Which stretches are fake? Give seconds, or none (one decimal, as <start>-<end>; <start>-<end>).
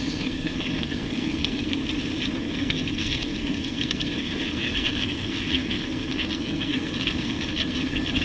0.0-1.8; 2.4-8.2